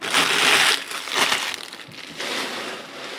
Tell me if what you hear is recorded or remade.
recorded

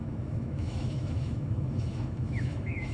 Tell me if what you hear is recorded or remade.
remade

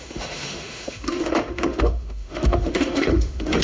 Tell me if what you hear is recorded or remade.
remade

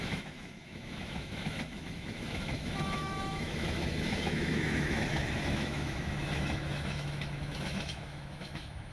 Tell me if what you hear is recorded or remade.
remade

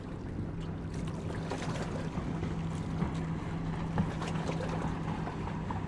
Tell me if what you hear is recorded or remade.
recorded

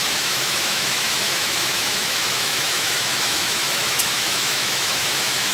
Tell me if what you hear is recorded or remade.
remade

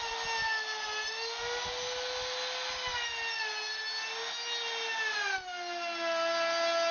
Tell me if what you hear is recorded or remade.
recorded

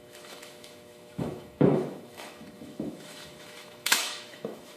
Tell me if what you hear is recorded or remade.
remade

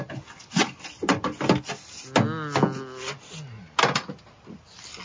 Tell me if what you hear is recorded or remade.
recorded